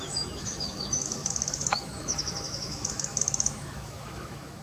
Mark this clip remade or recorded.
remade